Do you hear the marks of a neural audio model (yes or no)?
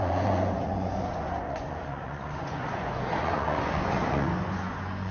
yes